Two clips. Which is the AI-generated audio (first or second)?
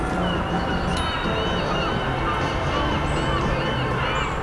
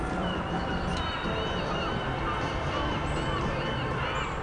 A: second